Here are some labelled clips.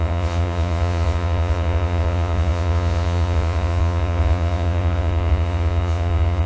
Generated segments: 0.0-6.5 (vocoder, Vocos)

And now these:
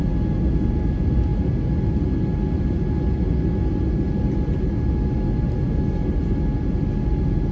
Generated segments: none

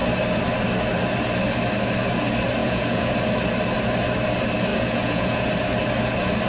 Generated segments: 2.6-3.1 (vocoder, Vocos); 4.7-5.5